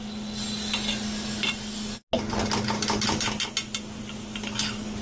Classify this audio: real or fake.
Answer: real